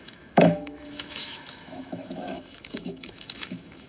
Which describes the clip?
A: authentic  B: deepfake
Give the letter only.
B